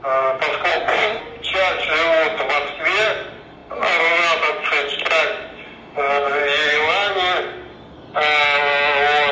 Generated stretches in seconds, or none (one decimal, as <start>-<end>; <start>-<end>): 0.7-1.2